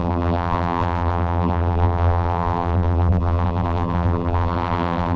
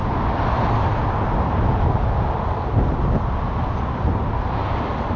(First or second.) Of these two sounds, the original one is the second